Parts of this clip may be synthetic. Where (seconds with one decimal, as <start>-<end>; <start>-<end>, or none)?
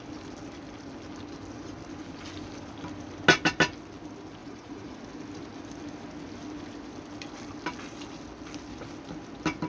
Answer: 4.4-5.0